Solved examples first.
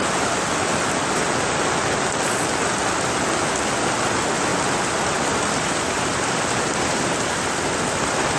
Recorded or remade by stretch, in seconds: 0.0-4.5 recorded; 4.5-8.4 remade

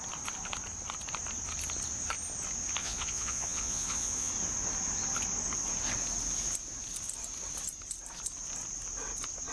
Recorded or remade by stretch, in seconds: 0.0-2.8 recorded; 2.8-4.3 remade; 4.3-9.5 recorded

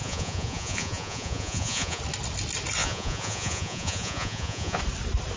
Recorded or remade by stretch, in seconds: 0.0-2.0 remade; 2.0-2.8 recorded; 2.8-4.8 remade; 4.8-5.4 recorded

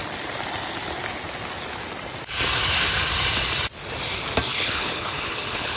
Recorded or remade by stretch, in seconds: 0.0-4.5 recorded; 4.5-5.8 remade

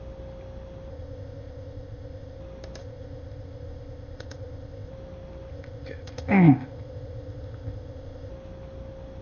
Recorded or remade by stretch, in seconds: 0.0-0.9 recorded; 0.9-2.4 remade; 2.4-2.8 recorded; 2.8-4.9 remade; 4.9-5.5 recorded; 5.5-8.3 remade; 8.3-9.2 recorded

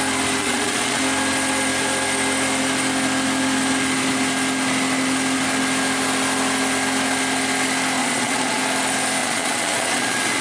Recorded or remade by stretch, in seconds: 0.0-0.4 recorded; 0.4-1.0 remade; 1.0-8.0 recorded; 8.0-8.6 remade; 8.6-9.2 recorded; 9.2-10.4 remade